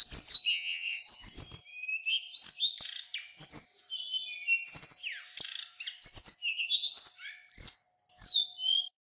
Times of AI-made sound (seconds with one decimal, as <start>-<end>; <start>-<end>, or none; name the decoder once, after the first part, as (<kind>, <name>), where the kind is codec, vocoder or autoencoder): 0.5-1.0 (vocoder, WaveNeXt)